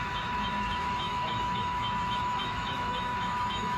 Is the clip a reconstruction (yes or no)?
yes